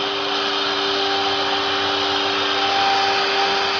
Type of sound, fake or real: real